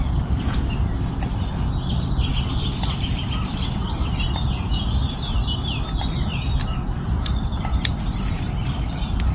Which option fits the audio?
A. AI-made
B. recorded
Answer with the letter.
B